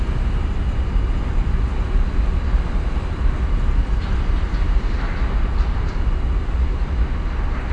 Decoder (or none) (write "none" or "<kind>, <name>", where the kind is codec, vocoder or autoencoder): none